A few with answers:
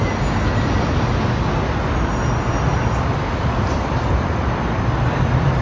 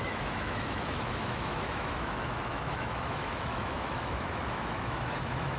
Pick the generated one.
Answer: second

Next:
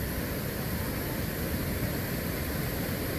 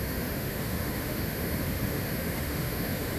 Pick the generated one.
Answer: second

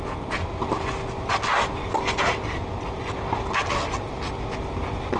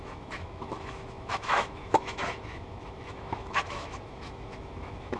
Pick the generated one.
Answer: second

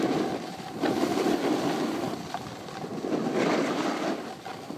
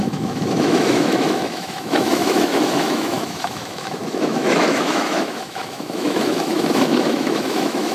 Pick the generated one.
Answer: second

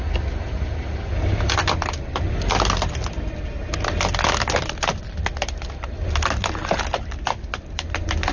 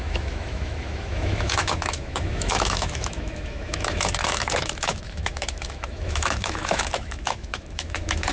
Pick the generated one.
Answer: second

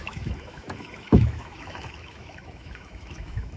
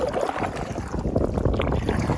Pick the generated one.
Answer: first